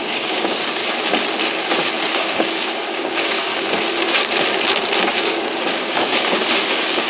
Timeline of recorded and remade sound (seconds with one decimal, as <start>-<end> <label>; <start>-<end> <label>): 0.0-0.8 remade; 0.8-2.1 recorded; 2.1-3.5 remade; 3.5-5.2 recorded; 5.2-7.1 remade